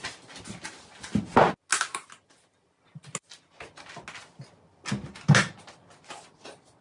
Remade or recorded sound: recorded